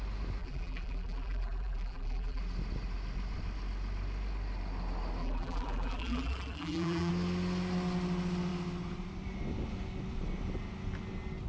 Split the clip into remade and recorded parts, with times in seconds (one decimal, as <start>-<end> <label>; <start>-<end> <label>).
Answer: 0.0-0.4 recorded; 0.4-2.4 remade; 2.4-5.2 recorded; 5.2-7.1 remade; 7.1-11.5 recorded